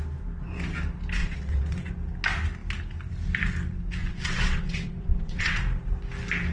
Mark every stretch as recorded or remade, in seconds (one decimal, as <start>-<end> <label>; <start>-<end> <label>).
0.0-1.2 recorded; 1.2-1.9 remade; 1.9-4.0 recorded; 4.0-5.6 remade; 5.6-6.5 recorded